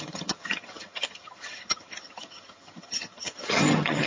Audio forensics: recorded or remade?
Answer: remade